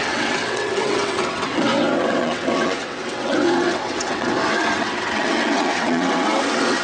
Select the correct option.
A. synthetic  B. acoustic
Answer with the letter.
A